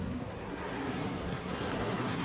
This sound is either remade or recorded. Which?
remade